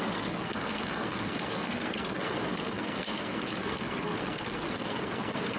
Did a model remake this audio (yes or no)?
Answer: yes